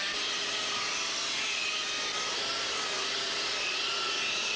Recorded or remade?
recorded